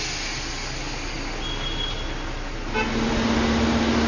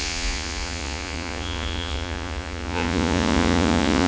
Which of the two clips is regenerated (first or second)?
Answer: second